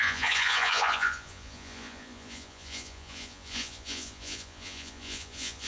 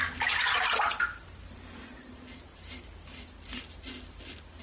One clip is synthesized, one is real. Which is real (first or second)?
second